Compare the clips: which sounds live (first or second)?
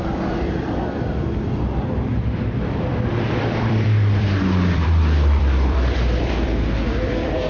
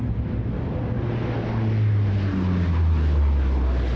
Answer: second